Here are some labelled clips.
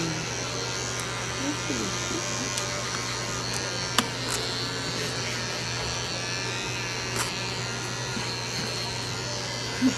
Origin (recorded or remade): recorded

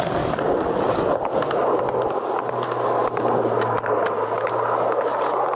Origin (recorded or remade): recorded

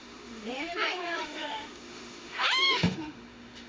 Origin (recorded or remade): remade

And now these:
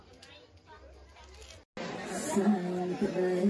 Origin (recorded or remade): recorded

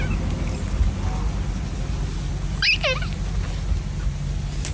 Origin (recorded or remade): recorded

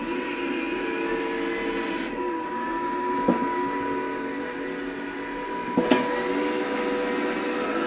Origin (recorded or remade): recorded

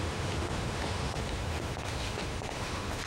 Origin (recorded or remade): remade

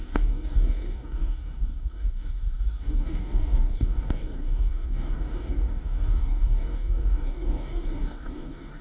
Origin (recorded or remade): remade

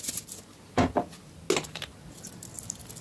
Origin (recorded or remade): recorded